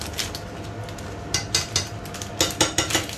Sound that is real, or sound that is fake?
real